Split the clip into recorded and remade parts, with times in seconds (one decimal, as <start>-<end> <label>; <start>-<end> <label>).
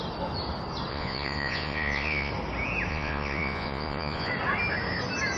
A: 0.0-0.9 recorded; 0.9-2.3 remade; 2.3-2.9 recorded; 2.9-4.3 remade; 4.3-5.4 recorded